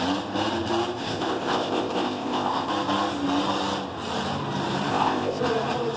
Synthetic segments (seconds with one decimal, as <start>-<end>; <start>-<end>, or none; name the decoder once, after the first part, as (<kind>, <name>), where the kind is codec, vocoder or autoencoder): 1.0-2.7 (codec, ZipCodec); 4.9-5.4